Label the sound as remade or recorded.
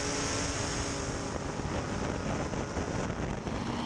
recorded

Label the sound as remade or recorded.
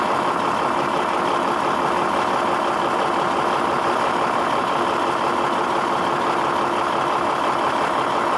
recorded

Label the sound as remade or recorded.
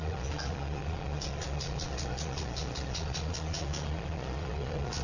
remade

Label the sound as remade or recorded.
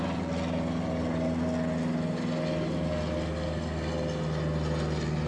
recorded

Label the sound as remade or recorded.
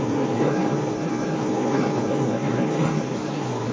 remade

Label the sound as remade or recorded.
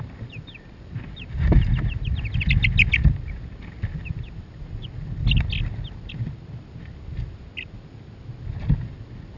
recorded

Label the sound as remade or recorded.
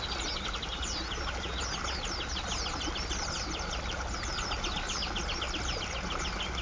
recorded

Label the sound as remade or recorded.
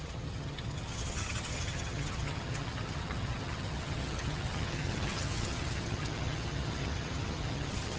remade